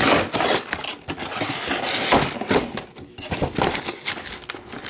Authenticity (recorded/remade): recorded